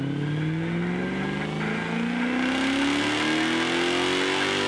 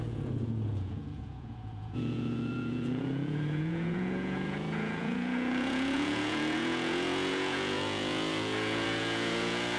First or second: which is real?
first